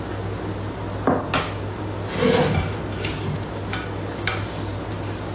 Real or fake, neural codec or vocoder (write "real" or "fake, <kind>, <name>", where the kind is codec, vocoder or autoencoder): real